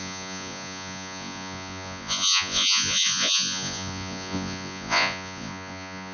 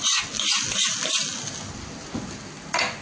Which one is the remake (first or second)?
first